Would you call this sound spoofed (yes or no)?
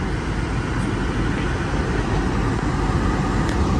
no